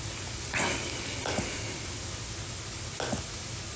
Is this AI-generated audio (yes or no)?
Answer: no